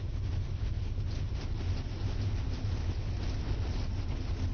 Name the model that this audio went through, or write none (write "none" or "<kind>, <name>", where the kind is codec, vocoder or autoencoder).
none